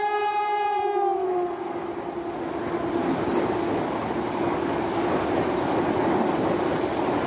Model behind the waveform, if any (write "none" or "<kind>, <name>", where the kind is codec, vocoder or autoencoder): none